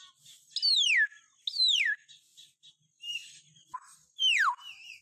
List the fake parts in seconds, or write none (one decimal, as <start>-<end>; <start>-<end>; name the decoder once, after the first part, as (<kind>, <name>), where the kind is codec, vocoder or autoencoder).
none